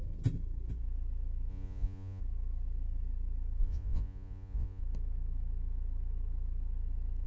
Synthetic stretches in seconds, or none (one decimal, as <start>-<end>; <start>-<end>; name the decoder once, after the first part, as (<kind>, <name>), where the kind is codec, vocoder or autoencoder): 1.5-2.2 (vocoder, Vocos); 3.6-4.8